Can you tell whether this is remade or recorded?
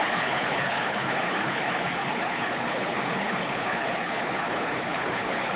remade